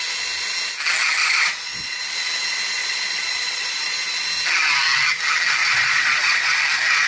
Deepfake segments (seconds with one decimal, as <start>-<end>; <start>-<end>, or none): 1.2-2.0; 2.8-4.1; 5.6-6.6